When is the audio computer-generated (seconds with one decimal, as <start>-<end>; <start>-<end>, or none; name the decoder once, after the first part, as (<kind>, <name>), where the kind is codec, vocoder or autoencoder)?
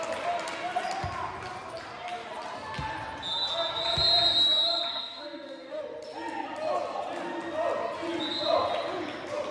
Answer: 4.9-5.8 (codec, SNAC)